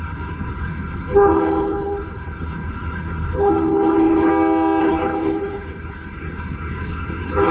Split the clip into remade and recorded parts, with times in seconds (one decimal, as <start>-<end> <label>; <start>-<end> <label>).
0.0-4.3 remade; 4.3-4.8 recorded; 4.8-7.5 remade